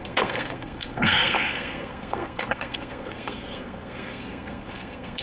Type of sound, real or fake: fake